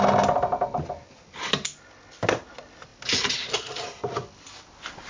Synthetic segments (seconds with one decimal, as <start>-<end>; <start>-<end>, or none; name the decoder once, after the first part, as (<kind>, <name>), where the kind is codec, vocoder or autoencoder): none